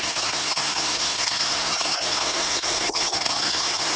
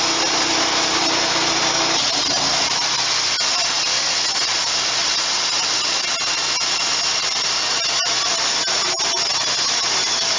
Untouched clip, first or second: second